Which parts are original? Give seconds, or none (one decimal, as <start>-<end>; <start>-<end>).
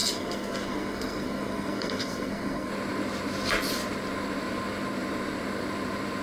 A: 2.7-6.2